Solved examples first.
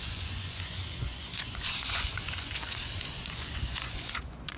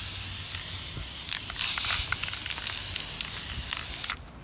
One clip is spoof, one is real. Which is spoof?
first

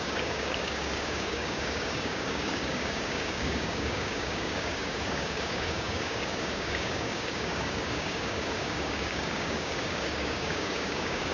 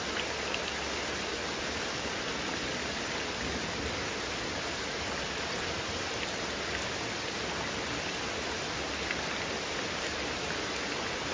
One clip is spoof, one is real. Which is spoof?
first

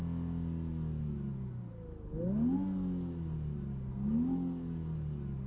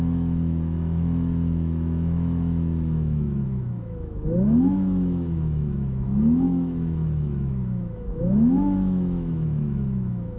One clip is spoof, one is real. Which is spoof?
second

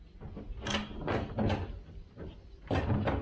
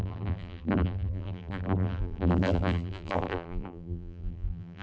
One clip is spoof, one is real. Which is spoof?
second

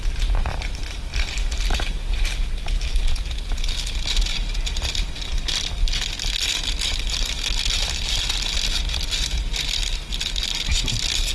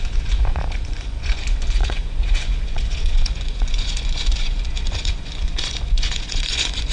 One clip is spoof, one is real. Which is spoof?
second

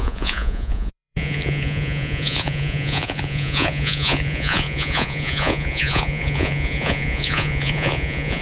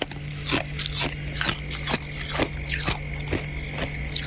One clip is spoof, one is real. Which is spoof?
first